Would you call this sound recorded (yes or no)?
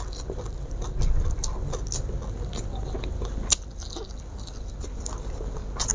yes